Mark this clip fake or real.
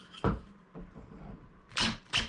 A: real